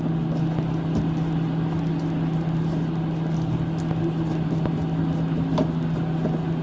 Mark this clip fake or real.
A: real